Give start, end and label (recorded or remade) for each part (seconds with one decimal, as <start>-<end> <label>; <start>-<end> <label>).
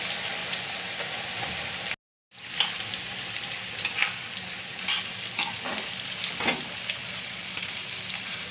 0.0-7.0 recorded; 7.0-7.7 remade; 7.7-8.5 recorded